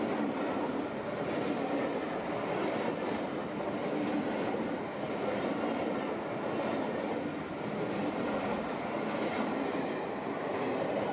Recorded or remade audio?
recorded